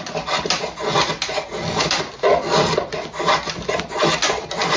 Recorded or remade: recorded